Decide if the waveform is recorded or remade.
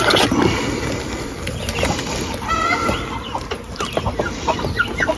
recorded